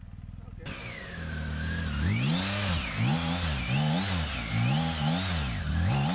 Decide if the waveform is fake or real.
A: real